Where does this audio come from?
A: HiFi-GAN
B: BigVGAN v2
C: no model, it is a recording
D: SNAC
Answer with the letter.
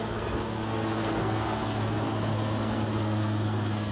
D